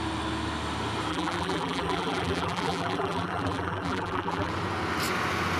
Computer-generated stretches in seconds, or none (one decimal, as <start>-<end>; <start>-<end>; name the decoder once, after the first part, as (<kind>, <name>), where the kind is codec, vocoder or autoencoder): 1.1-4.5 (vocoder, BigVGAN v2)